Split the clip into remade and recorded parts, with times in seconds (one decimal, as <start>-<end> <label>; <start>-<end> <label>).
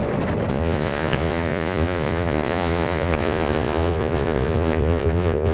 0.0-0.5 recorded; 0.5-5.5 remade